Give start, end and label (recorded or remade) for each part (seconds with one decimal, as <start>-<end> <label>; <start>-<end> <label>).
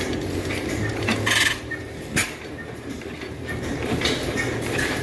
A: 0.0-1.1 remade; 1.1-1.8 recorded; 1.8-2.2 remade; 2.2-2.9 recorded; 2.9-5.0 remade